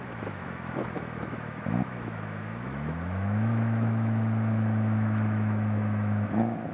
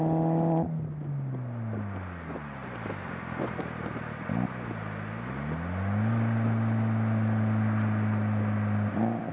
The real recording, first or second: second